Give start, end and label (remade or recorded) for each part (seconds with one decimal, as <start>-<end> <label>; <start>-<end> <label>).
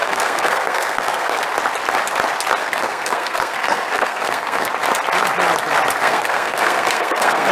0.0-1.4 remade; 1.4-2.6 recorded; 2.6-4.7 remade; 4.7-6.0 recorded; 6.0-7.5 remade